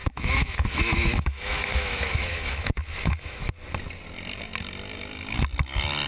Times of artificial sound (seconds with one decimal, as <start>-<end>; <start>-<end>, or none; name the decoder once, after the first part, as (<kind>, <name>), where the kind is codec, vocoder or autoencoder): 0.0-3.5 (autoencoder, DAC-VAE)